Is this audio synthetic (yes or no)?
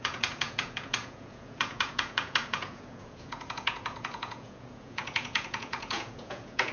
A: yes